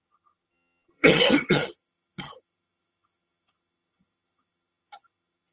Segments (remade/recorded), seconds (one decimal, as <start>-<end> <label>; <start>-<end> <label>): 0.0-5.5 remade